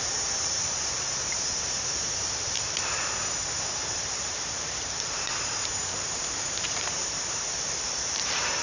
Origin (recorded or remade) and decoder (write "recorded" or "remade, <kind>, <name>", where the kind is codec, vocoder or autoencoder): remade, vocoder, BigVGAN v2